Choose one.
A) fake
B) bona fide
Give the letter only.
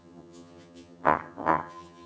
A